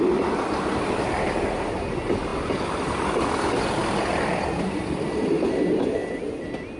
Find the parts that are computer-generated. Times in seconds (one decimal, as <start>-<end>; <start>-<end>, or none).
none